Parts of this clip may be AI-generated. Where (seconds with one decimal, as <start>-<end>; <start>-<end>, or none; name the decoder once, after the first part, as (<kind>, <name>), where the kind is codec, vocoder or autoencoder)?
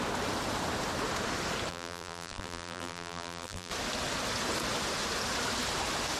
1.7-3.7 (vocoder, BigVGAN v2)